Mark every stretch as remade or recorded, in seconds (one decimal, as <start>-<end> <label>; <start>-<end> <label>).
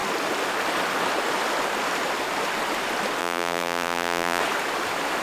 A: 0.0-3.2 recorded; 3.2-4.4 remade; 4.4-5.2 recorded